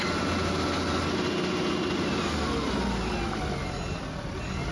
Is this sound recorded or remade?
recorded